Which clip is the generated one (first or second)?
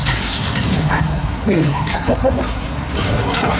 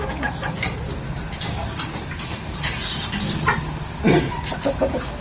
first